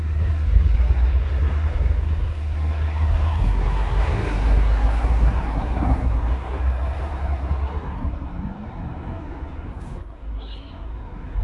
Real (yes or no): no